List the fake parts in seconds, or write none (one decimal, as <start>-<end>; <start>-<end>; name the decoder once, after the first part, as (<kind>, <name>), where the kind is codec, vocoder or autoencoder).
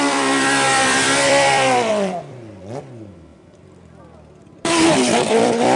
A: 0.0-5.8 (vocoder, BigVGAN v2)